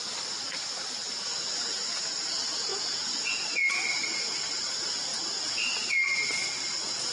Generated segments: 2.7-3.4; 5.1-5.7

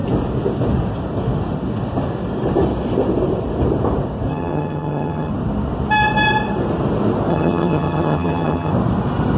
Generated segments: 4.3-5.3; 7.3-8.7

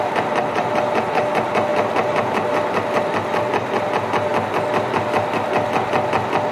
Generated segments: none

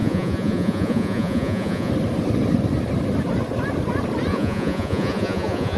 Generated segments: 0.0-1.9; 4.3-5.8